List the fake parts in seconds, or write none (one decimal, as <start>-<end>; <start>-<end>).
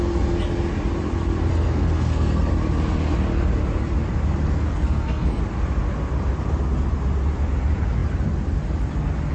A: 1.5-2.5; 4.7-5.4